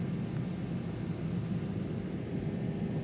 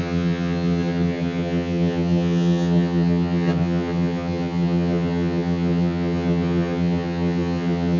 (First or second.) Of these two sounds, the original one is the first